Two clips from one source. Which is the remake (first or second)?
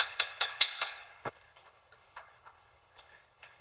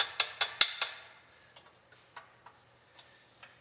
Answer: first